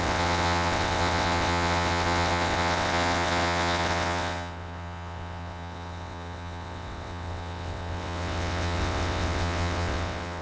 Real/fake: fake